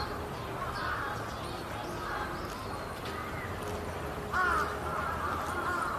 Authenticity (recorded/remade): recorded